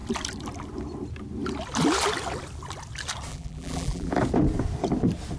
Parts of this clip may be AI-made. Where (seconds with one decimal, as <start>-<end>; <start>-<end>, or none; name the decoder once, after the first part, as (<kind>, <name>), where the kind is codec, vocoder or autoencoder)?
3.3-4.2 (vocoder, BigVGAN v2)

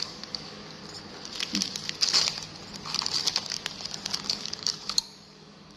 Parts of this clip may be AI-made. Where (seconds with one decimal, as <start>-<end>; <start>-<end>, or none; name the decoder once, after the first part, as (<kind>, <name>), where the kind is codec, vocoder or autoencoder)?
0.0-0.8 (codec, DAC); 4.3-5.8

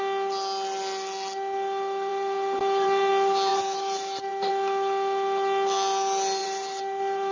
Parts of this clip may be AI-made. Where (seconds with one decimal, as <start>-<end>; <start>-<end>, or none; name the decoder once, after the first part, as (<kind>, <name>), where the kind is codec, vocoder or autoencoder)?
2.1-3.1 (vocoder, BigVGAN v2); 3.5-4.5; 6.4-7.3

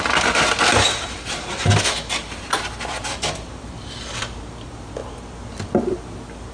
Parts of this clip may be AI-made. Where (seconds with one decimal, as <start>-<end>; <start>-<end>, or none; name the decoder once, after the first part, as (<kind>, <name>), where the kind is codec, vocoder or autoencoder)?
2.2-4.2 (vocoder, BigVGAN v2)

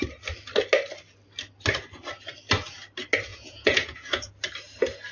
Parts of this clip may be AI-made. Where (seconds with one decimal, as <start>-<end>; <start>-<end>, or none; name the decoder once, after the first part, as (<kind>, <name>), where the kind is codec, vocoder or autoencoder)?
3.3-4.3 (vocoder, Vocos)

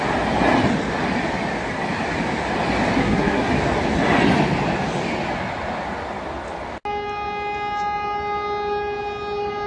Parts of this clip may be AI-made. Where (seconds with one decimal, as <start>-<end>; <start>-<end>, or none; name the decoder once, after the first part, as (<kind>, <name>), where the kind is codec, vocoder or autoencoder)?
3.0-3.5 (codec, SNAC)

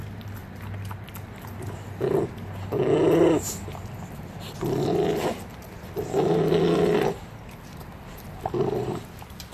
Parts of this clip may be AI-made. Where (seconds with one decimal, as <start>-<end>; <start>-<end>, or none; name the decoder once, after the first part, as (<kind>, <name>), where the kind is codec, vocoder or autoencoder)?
none

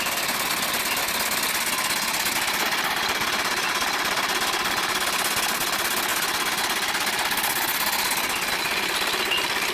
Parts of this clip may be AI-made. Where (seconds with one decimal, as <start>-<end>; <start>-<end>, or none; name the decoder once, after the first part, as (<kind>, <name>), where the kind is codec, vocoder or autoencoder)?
none